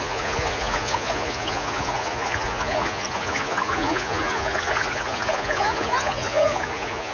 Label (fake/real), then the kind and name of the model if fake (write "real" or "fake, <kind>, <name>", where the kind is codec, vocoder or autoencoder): fake, vocoder, Vocos